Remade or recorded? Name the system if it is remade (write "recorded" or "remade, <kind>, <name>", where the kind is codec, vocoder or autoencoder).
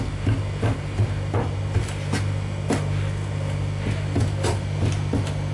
recorded